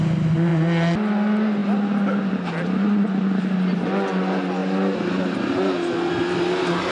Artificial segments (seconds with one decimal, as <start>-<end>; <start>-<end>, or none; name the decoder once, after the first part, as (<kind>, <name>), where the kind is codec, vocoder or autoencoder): none